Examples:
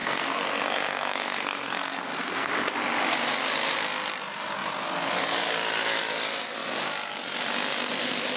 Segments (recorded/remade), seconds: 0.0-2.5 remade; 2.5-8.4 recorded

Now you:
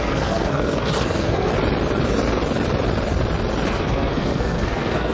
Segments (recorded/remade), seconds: 0.0-1.5 remade; 1.5-3.7 recorded; 3.7-5.1 remade

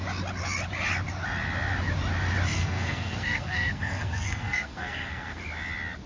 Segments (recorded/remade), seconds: 0.0-2.5 recorded; 2.5-5.4 remade; 5.4-6.1 recorded

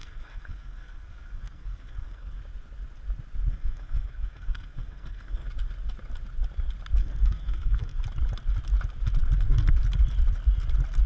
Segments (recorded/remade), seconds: 0.0-2.4 remade; 2.4-3.5 recorded; 3.5-5.5 remade; 5.5-7.0 recorded; 7.0-8.0 remade; 8.0-11.1 recorded

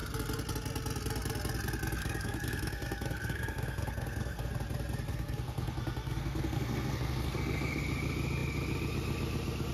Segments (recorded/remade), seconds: 0.0-2.0 recorded; 2.0-4.5 remade; 4.5-5.1 recorded; 5.1-7.8 remade; 7.8-9.7 recorded

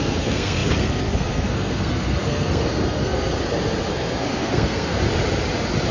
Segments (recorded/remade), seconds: 0.0-3.3 remade; 3.3-3.9 recorded; 3.9-5.0 remade; 5.0-5.9 recorded

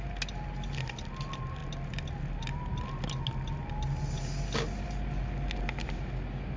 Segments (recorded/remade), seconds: 0.0-6.6 recorded